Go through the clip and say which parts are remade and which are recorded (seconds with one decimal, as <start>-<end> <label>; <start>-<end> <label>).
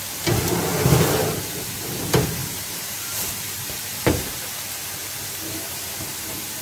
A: 0.0-2.4 recorded; 2.4-4.5 remade; 4.5-6.6 recorded